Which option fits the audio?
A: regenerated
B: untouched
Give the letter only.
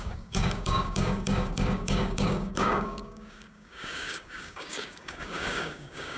A